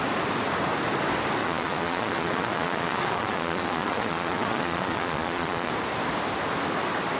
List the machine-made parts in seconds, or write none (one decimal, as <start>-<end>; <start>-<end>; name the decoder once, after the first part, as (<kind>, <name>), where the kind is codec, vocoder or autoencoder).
1.4-5.7 (vocoder, Vocos)